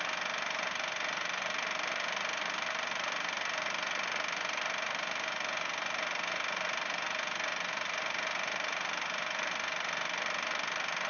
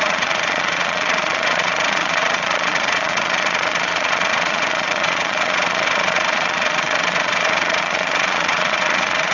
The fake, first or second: second